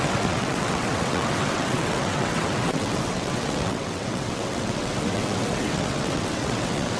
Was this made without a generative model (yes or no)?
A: no